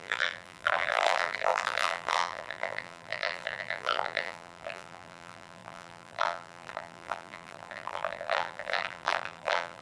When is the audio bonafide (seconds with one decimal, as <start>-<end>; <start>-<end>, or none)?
none